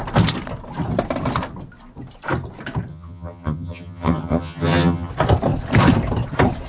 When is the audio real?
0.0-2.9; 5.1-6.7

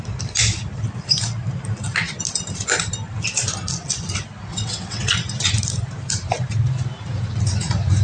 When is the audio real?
0.0-4.5; 5.1-8.0

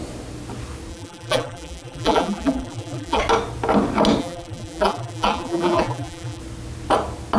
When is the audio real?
0.0-0.9; 3.2-4.2; 6.4-7.4

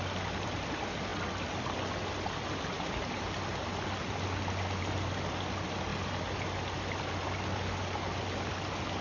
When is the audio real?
0.0-9.0